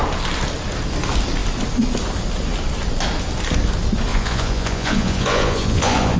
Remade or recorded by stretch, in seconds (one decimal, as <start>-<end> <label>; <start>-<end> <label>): 0.0-4.1 recorded; 4.1-6.2 remade

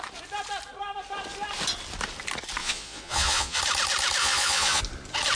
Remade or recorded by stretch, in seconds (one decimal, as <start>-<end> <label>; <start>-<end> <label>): 0.0-2.6 recorded; 2.6-3.6 remade; 3.6-4.2 recorded; 4.2-4.8 remade; 4.8-5.3 recorded

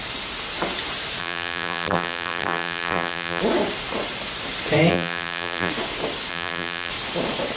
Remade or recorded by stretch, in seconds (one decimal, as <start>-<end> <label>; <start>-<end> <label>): 0.0-1.2 recorded; 1.2-3.4 remade; 3.4-4.9 recorded; 4.9-5.7 remade; 5.7-6.3 recorded; 6.3-6.9 remade; 6.9-7.6 recorded

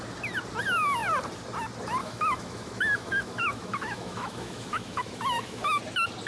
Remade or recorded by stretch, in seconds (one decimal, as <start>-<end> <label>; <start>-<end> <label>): 0.0-2.0 recorded; 2.0-5.8 remade; 5.8-6.3 recorded

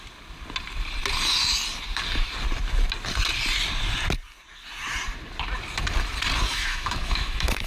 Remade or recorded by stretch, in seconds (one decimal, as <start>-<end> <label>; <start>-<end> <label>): 0.0-6.5 recorded; 6.5-7.7 remade